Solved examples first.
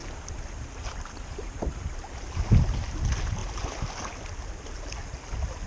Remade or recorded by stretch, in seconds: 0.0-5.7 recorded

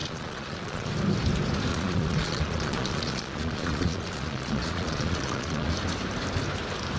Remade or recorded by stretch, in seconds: 0.0-0.9 remade; 0.9-1.7 recorded; 1.7-5.7 remade; 5.7-7.0 recorded

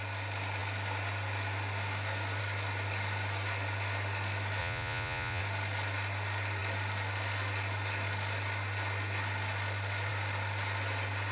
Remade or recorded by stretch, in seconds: 0.0-4.6 recorded; 4.6-5.4 remade; 5.4-11.3 recorded

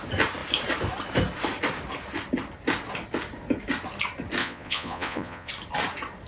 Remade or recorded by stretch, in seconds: 0.0-4.4 recorded; 4.4-5.5 remade; 5.5-6.3 recorded

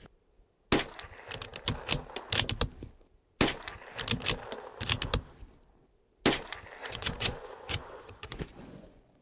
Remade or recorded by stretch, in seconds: 0.0-6.8 recorded; 6.8-9.2 remade

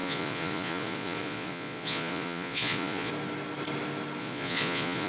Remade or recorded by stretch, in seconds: 0.0-3.1 remade; 3.1-4.2 recorded; 4.2-5.1 remade